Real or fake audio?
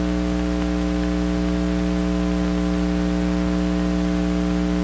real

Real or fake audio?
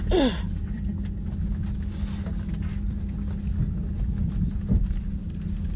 real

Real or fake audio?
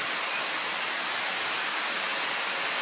fake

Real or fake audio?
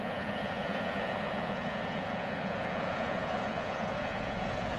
fake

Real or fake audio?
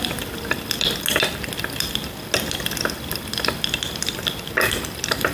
real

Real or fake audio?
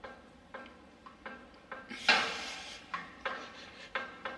real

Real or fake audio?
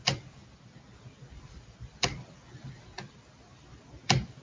real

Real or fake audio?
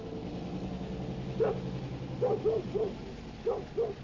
real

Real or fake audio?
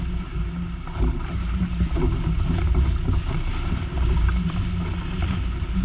real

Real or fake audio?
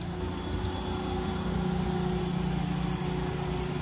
real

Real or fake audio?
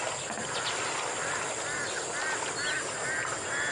real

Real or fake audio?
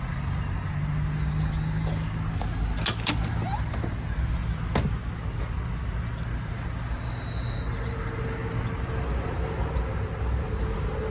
real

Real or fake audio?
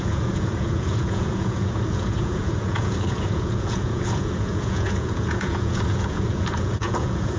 fake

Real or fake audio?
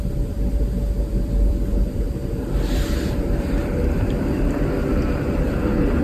fake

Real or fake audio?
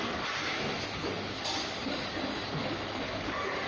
fake